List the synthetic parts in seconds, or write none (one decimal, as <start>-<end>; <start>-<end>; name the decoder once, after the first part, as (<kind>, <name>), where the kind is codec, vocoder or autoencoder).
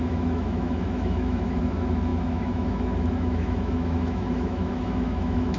0.0-5.6 (autoencoder, DAC-VAE)